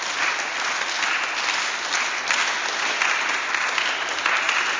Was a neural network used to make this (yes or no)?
no